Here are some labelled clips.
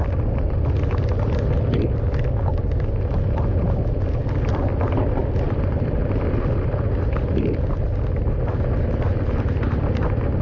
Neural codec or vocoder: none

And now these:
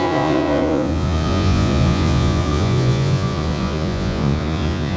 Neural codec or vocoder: vocoder, Vocos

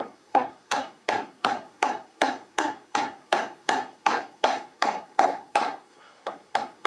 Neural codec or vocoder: codec, SNAC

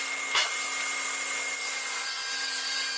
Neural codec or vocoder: none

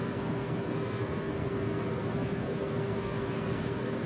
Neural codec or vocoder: codec, SNAC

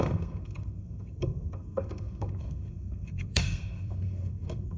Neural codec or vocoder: codec, SNAC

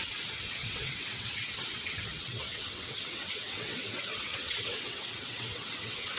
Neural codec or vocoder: vocoder, WaveNeXt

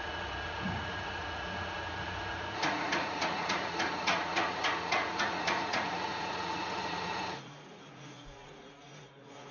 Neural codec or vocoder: vocoder, Vocos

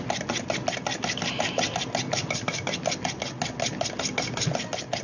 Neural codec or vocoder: none